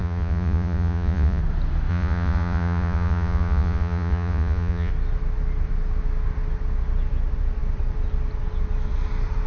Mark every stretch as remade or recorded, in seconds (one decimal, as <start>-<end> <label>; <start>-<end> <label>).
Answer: 0.0-1.4 remade; 1.4-1.9 recorded; 1.9-4.9 remade; 4.9-9.5 recorded